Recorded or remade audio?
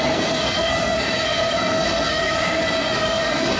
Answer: remade